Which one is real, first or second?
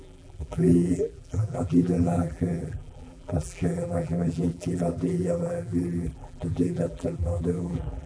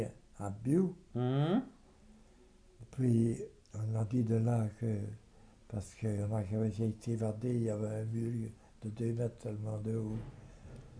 second